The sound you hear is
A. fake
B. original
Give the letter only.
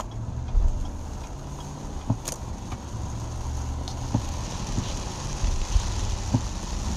B